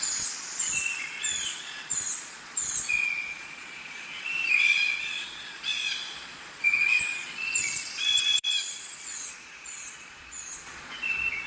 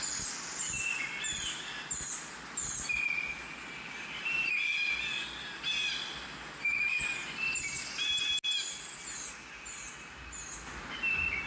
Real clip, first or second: second